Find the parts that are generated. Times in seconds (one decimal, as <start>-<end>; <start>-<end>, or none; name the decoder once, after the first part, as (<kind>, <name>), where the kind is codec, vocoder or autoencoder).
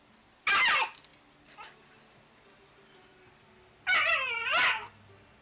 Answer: none